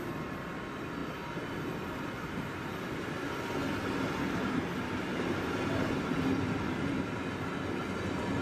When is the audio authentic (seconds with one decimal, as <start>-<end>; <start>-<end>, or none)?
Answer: 0.0-1.0; 3.4-8.4